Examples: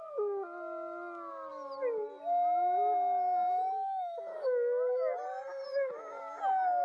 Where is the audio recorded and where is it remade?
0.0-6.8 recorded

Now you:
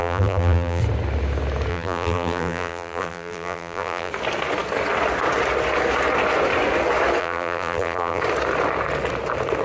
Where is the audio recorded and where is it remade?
0.0-0.8 remade; 0.8-1.7 recorded; 1.7-4.1 remade; 4.1-7.2 recorded; 7.2-8.2 remade; 8.2-9.6 recorded

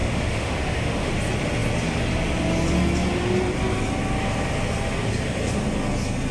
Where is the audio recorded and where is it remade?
0.0-1.1 remade; 1.1-6.3 recorded

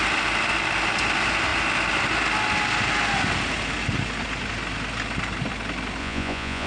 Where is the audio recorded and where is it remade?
0.0-6.0 recorded; 6.0-6.7 remade

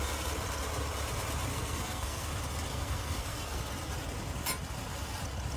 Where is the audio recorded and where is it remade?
0.0-1.5 recorded; 1.5-2.3 remade; 2.3-2.7 recorded; 2.7-3.6 remade; 3.6-5.6 recorded

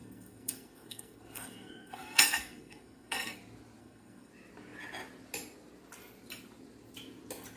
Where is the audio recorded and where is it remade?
0.0-3.4 remade; 3.4-3.8 recorded; 3.8-4.3 remade; 4.3-7.6 recorded